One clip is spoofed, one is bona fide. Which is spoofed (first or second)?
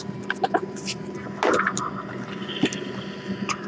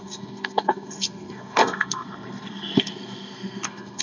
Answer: second